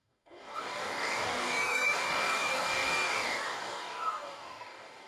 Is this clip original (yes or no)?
no